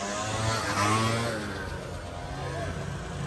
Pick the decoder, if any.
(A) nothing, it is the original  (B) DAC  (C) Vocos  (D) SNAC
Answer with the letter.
A